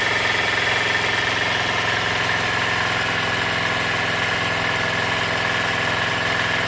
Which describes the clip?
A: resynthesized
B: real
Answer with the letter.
B